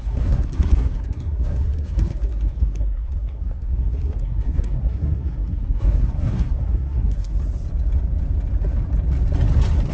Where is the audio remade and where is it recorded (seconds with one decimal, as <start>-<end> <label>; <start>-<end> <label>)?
0.0-7.3 remade; 7.3-9.9 recorded